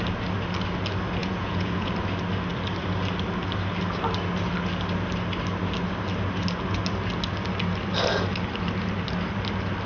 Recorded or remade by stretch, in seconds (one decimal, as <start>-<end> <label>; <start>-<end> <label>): 0.0-1.2 recorded; 1.2-1.9 remade; 1.9-9.9 recorded